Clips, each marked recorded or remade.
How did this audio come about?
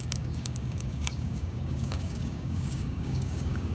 remade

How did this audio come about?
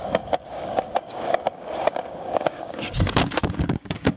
remade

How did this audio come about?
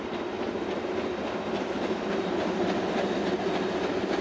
recorded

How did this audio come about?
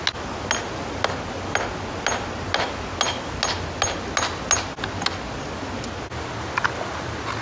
recorded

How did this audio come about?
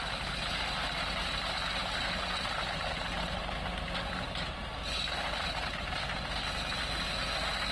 recorded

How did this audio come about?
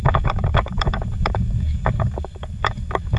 remade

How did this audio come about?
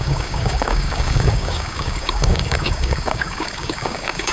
remade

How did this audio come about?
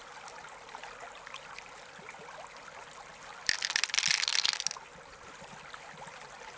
recorded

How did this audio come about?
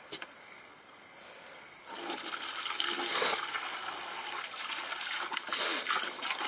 recorded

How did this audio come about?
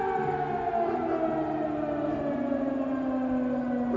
recorded